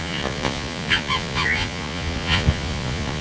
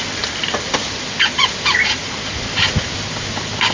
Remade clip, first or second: first